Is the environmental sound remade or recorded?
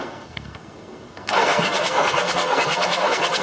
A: remade